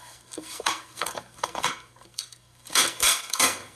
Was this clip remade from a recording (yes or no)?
yes